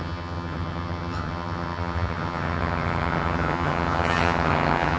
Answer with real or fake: fake